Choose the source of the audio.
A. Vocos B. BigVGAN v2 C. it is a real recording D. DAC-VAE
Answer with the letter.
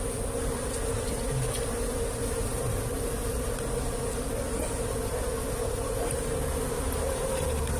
C